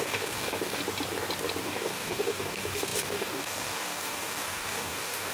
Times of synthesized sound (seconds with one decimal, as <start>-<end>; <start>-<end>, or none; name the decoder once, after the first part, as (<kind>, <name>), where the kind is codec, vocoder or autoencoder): 0.0-0.8 (codec, DAC); 1.6-5.3